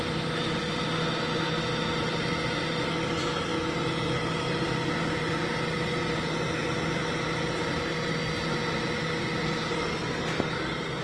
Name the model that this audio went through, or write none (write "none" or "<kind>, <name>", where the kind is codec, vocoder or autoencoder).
none